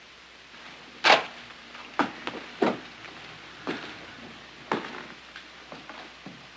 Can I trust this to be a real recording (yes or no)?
yes